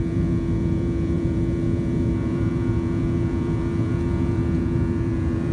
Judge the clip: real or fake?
fake